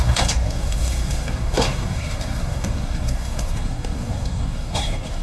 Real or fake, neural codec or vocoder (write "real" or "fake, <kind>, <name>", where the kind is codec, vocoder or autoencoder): fake, codec, SNAC